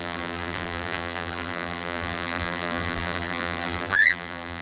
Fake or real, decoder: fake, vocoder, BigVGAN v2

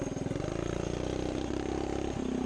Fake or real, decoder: real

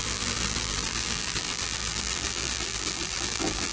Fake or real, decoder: fake, vocoder, BigVGAN v2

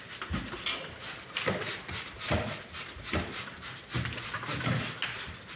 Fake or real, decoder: real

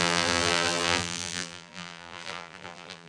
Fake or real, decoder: fake, vocoder, BigVGAN v2